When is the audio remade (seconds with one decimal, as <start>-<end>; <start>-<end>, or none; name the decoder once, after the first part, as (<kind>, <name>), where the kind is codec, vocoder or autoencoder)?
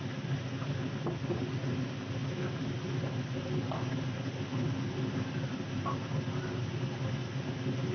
none